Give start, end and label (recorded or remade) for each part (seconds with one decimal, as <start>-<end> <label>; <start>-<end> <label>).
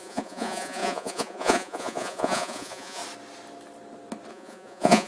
0.0-3.0 remade; 3.0-4.3 recorded; 4.3-5.1 remade